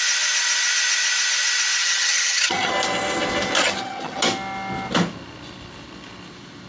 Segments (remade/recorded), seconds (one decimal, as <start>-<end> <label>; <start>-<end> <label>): 0.0-1.8 recorded; 1.8-2.7 remade; 2.7-3.6 recorded; 3.6-4.2 remade; 4.2-6.7 recorded